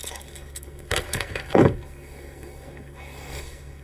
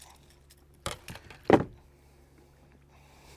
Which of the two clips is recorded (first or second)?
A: second